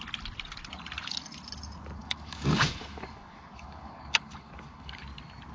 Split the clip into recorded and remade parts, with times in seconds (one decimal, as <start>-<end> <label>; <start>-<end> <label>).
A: 0.0-2.0 recorded; 2.0-5.0 remade; 5.0-5.5 recorded

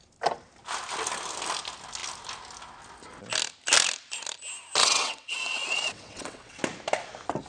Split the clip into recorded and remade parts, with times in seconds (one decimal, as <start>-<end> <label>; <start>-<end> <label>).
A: 0.0-4.8 recorded; 4.8-6.6 remade; 6.6-7.5 recorded

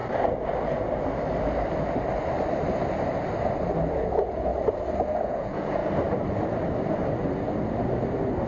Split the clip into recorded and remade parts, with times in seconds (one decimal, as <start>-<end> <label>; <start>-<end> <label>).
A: 0.0-3.9 recorded; 3.9-4.5 remade; 4.5-5.0 recorded; 5.0-5.8 remade; 5.8-8.5 recorded

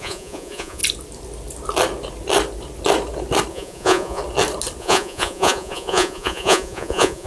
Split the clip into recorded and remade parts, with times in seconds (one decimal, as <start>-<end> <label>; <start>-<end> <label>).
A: 0.0-0.8 remade; 0.8-3.5 recorded; 3.5-4.2 remade; 4.2-4.8 recorded; 4.8-7.3 remade

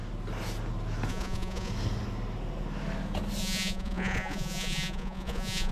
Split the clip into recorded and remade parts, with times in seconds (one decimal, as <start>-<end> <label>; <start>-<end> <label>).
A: 0.0-1.1 recorded; 1.1-1.7 remade; 1.7-3.4 recorded; 3.4-5.7 remade

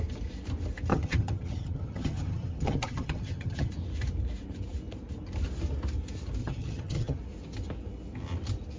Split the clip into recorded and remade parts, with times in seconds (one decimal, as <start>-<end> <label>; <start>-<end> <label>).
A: 0.0-0.9 recorded; 0.9-3.7 remade; 3.7-6.4 recorded; 6.4-7.2 remade; 7.2-8.8 recorded